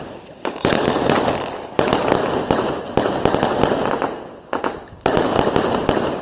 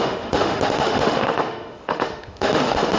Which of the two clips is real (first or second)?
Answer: first